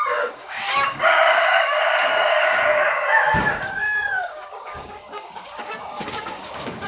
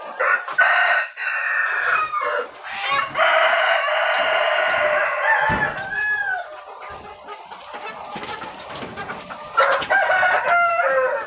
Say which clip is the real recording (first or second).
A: second